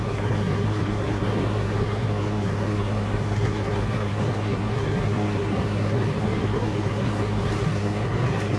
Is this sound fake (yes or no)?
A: yes